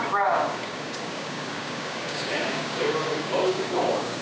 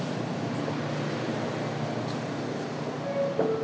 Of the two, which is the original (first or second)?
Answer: second